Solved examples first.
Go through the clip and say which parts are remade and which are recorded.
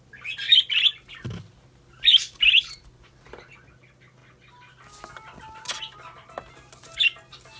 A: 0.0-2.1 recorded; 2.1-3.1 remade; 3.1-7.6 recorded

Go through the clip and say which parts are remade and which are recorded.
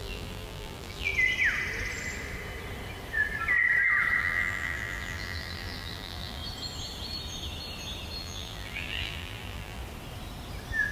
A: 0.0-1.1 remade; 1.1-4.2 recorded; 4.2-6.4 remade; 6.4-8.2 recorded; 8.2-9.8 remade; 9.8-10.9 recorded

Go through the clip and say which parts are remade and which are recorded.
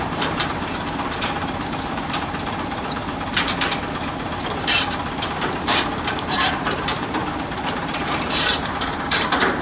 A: 0.0-3.7 remade; 3.7-6.1 recorded; 6.1-9.6 remade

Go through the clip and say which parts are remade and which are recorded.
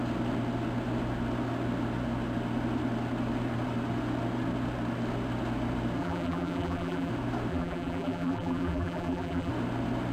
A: 0.0-6.0 recorded; 6.0-7.1 remade; 7.1-7.5 recorded; 7.5-9.5 remade; 9.5-10.1 recorded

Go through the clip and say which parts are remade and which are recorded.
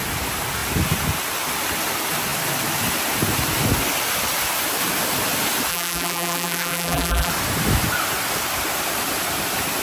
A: 0.0-5.7 recorded; 5.7-7.3 remade; 7.3-9.8 recorded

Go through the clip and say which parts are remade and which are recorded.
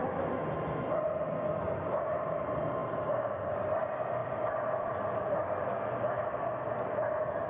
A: 0.0-2.8 recorded; 2.8-3.5 remade; 3.5-4.2 recorded; 4.2-5.4 remade; 5.4-7.5 recorded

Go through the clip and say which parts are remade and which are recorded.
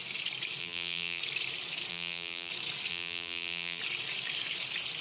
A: 0.0-0.6 recorded; 0.6-1.2 remade; 1.2-1.9 recorded; 1.9-2.5 remade; 2.5-2.9 recorded; 2.9-3.8 remade; 3.8-5.0 recorded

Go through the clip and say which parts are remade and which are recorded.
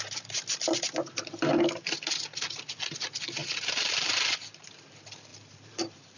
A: 0.0-3.4 recorded; 3.4-4.7 remade; 4.7-5.3 recorded; 5.3-6.2 remade